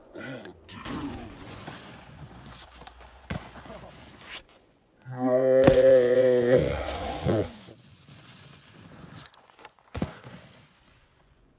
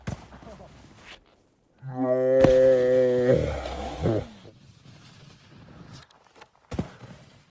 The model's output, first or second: first